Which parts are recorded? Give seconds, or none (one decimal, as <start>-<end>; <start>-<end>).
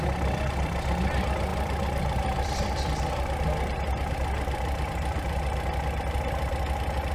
0.0-7.1